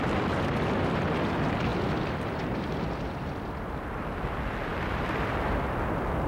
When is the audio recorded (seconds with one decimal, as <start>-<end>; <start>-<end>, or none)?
0.0-1.7; 3.7-4.7; 5.5-6.3